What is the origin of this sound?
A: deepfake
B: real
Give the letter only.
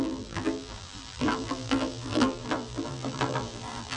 A